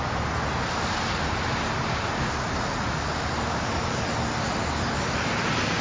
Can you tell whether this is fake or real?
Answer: real